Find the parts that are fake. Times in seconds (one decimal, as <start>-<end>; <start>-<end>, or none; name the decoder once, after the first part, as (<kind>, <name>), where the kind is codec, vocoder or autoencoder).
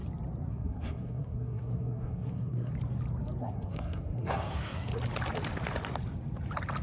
0.5-2.7 (codec, SNAC); 3.4-4.9